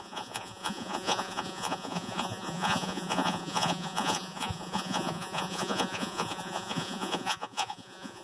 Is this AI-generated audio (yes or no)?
yes